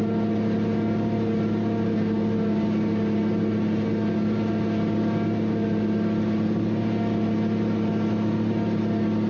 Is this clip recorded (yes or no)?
yes